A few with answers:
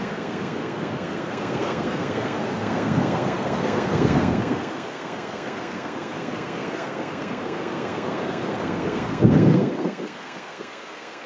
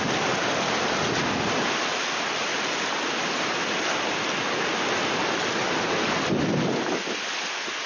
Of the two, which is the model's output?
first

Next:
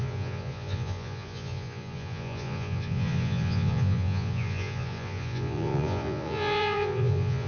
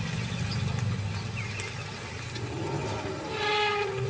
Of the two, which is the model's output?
first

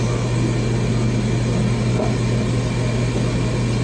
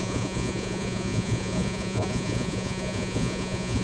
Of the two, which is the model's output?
second